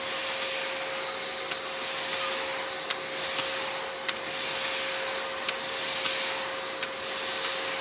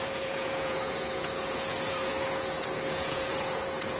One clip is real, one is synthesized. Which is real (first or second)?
first